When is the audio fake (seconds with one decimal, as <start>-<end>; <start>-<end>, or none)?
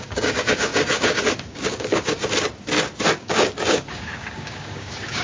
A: 0.0-2.2; 3.1-5.2